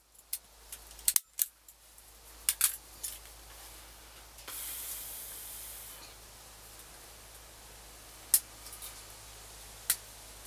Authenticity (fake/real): real